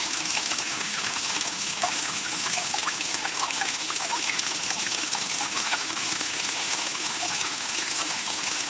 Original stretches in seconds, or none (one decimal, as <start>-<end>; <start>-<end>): none